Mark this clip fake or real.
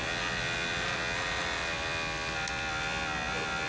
real